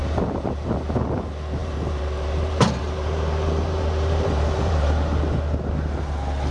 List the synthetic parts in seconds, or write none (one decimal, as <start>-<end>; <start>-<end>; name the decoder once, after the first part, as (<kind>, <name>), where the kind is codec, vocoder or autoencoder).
0.0-0.7 (vocoder, BigVGAN v2); 1.6-4.9